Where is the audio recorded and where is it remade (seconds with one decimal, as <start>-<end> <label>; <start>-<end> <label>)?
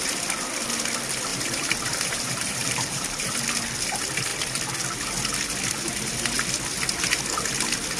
0.0-1.3 recorded; 1.3-3.3 remade; 3.3-8.0 recorded